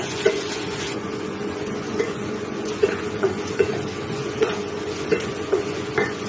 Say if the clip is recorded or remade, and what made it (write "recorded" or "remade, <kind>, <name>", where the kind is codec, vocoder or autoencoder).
remade, vocoder, Vocos